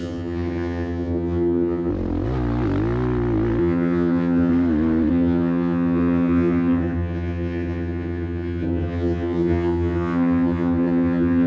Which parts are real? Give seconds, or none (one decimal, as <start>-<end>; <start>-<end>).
1.9-3.6; 4.5-5.1